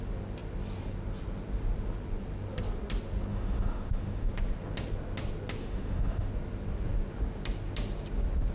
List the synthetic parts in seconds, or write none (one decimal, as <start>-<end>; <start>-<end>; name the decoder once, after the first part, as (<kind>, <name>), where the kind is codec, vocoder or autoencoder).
3.3-4.3 (autoencoder, DAC-VAE); 5.6-6.3